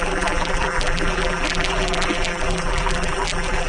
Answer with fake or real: fake